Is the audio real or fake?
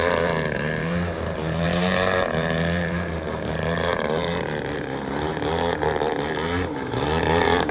fake